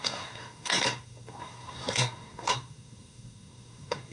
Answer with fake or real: fake